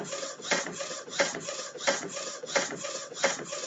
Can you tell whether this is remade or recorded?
remade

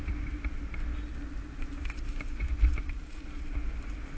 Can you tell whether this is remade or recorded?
recorded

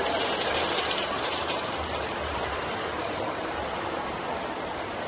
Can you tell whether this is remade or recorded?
remade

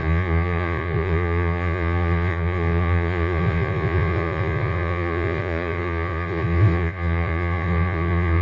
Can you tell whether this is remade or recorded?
remade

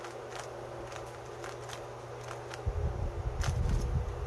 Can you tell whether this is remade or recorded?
recorded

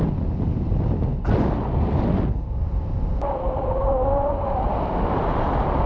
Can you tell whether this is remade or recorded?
recorded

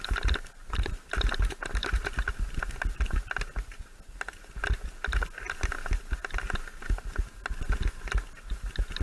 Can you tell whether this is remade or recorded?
recorded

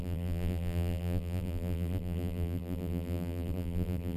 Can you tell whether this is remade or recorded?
remade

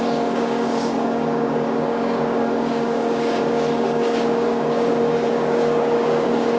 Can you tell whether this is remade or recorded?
remade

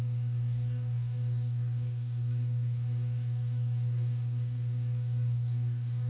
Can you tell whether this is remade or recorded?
remade